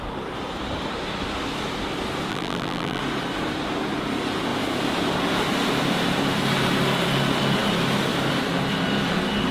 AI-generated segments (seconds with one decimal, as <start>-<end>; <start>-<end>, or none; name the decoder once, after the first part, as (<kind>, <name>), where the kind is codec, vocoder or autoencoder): 2.3-3.0 (vocoder, BigVGAN v2)